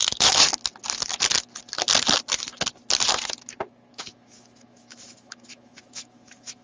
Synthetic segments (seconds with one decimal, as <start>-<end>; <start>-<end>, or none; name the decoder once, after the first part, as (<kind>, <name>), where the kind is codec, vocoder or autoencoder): 3.9-6.6 (autoencoder, DAC-VAE)

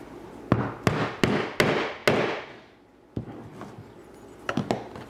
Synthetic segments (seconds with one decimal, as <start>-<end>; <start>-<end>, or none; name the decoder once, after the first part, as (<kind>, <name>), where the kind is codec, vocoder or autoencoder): none

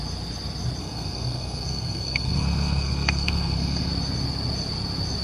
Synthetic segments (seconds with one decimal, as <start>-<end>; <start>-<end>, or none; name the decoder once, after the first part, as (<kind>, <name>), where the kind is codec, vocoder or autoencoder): 0.8-3.9 (codec, SNAC)

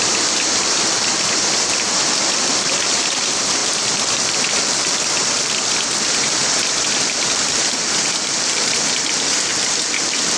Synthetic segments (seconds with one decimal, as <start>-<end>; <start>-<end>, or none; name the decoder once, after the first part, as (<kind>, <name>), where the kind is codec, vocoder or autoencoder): 0.0-6.4 (vocoder, BigVGAN v2); 7.2-10.4

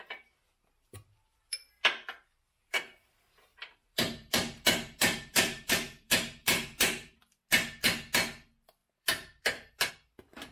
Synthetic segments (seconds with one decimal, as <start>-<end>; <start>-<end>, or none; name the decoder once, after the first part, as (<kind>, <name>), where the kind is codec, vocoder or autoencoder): 3.5-7.2 (vocoder, BigVGAN v2); 8.8-9.9